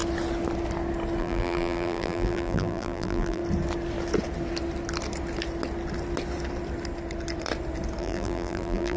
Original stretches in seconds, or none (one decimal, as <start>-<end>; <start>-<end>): 0.0-1.2; 3.4-8.0